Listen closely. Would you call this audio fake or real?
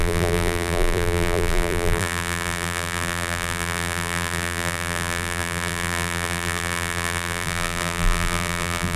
fake